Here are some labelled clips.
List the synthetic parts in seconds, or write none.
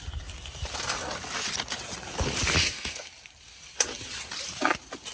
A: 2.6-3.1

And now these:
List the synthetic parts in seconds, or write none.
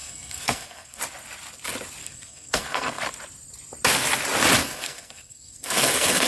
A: 0.0-1.0; 2.0-3.0; 4.6-6.3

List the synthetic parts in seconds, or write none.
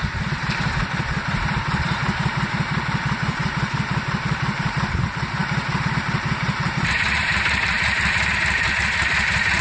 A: 0.7-9.6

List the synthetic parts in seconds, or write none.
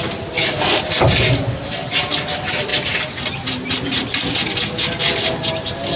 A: none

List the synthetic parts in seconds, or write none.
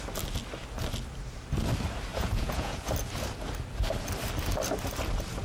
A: 2.1-2.9